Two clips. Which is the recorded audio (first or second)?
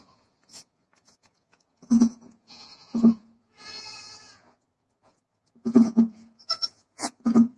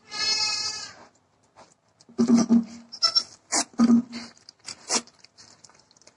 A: second